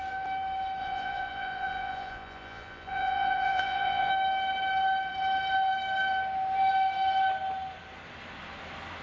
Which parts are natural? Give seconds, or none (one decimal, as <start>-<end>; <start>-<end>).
0.0-0.8; 4.1-9.0